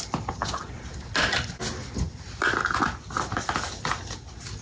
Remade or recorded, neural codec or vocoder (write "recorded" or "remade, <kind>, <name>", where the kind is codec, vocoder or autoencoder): recorded